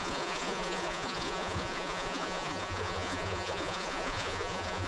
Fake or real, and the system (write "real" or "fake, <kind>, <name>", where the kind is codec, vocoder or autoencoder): fake, vocoder, Vocos